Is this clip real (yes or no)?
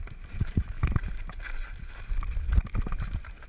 yes